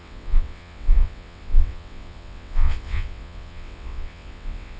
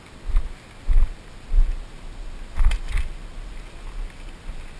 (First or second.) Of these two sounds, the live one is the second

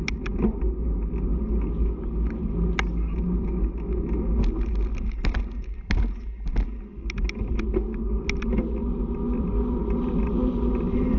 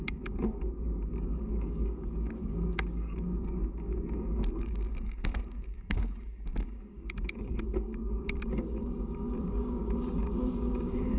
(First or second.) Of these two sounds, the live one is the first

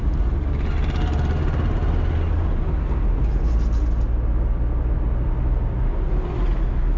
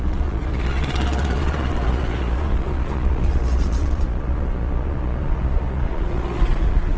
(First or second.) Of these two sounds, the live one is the first